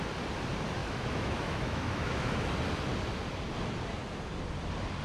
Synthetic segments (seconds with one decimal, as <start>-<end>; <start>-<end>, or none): 0.8-2.5